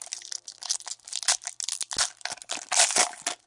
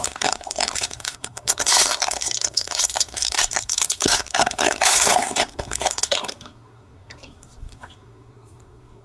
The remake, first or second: second